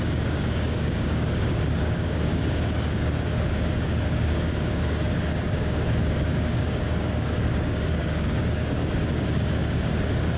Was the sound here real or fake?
fake